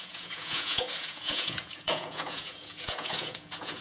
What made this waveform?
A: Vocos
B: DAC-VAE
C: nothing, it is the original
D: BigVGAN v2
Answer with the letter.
A